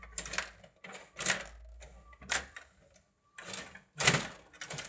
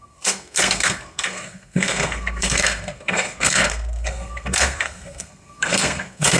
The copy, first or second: second